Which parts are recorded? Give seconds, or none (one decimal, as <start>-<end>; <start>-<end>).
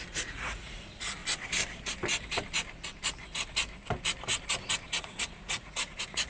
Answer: 1.2-5.0